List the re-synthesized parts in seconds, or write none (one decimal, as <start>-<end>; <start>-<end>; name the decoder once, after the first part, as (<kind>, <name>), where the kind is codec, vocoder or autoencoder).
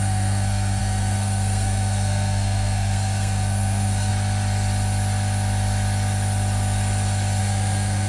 0.0-4.1 (codec, SNAC); 7.4-8.1